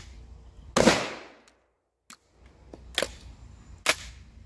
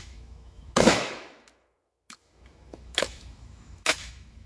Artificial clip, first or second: second